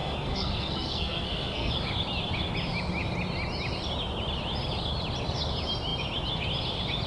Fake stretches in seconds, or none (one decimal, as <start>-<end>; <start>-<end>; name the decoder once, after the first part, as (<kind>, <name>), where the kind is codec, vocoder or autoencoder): 0.0-1.7 (codec, SNAC)